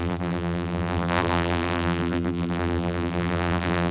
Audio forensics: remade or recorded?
remade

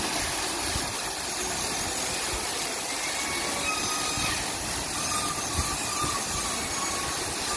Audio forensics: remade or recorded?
recorded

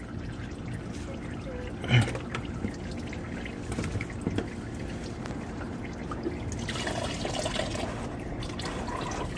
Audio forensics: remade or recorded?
recorded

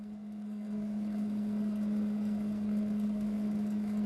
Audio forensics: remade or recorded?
remade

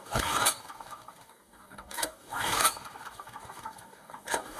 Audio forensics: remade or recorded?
remade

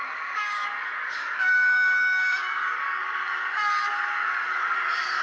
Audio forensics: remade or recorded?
remade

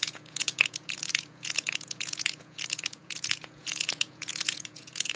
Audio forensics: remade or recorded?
remade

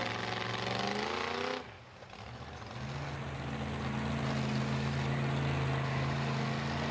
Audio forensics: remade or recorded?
recorded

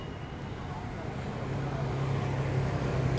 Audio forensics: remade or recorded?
recorded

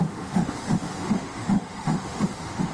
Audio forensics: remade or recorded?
remade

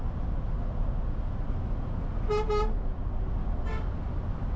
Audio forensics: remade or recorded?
recorded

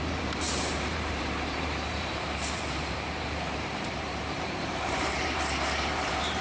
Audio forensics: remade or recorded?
remade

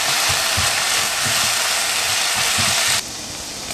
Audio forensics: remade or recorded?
recorded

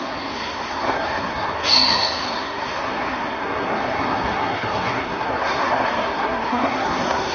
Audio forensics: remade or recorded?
remade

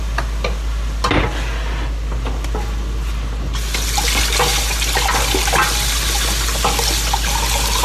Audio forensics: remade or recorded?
recorded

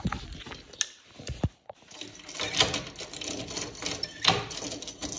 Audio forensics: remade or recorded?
recorded